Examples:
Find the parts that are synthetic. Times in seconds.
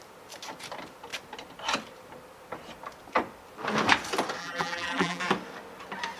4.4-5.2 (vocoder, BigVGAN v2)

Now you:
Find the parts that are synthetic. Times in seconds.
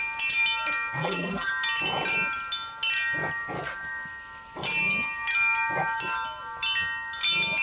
1.0-1.5 (vocoder, BigVGAN v2)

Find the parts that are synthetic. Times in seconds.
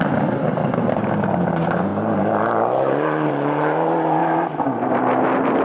4.2-5.0 (vocoder, BigVGAN v2)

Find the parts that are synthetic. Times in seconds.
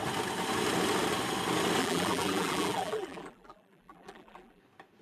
1.8-4.6 (vocoder, BigVGAN v2)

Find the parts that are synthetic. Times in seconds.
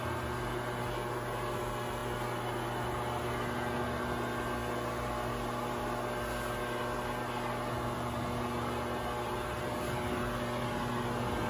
none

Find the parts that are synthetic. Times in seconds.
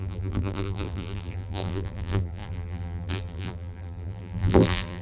0.0-5.0 (vocoder, BigVGAN v2)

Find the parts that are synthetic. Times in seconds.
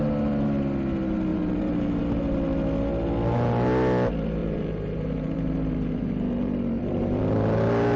1.3-2.0 (vocoder, BigVGAN v2); 4.4-7.2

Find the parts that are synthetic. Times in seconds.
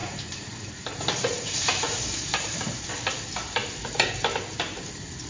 0.0-2.9 (vocoder, BigVGAN v2)